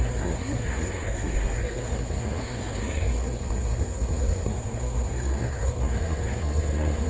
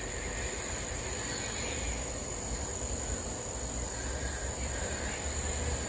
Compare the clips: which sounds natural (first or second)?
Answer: second